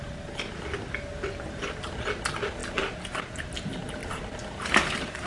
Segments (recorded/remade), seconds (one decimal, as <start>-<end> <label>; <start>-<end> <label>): 0.0-4.0 recorded; 4.0-5.3 remade